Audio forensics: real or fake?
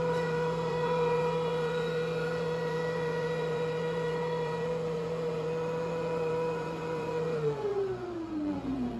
fake